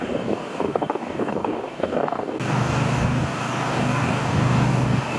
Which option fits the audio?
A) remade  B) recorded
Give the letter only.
A